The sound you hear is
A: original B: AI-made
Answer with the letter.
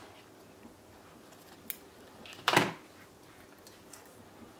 A